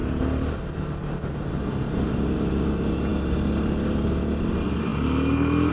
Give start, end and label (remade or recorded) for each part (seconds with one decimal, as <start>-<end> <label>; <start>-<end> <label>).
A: 0.0-5.7 recorded